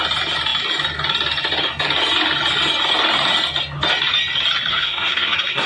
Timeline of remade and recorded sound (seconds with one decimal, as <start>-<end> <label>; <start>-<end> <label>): 0.0-4.7 recorded; 4.7-5.7 remade